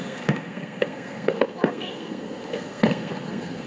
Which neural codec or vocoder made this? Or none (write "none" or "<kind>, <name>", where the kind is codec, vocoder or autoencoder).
codec, SNAC